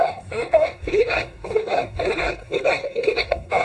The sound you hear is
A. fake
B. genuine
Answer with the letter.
A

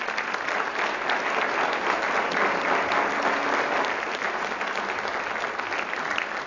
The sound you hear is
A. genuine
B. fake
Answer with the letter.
A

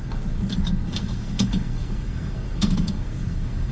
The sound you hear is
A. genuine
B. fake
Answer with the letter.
B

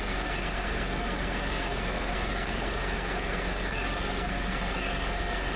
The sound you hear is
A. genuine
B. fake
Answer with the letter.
B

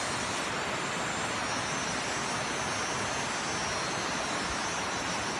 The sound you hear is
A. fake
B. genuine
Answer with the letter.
B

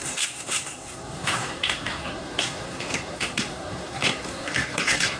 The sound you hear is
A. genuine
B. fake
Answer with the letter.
B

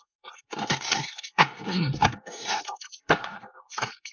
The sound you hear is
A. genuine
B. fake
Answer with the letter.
B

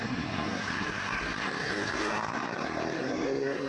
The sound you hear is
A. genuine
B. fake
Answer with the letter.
B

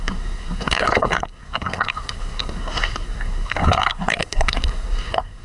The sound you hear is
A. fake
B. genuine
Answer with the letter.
A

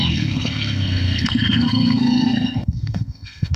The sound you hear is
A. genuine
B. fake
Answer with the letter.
B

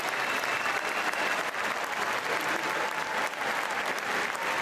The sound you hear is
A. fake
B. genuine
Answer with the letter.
B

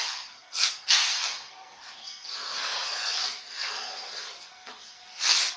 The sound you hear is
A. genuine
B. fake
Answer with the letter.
B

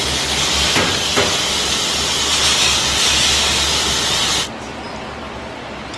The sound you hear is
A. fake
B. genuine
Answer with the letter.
B